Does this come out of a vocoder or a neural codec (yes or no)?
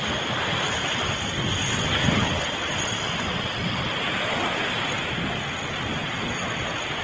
no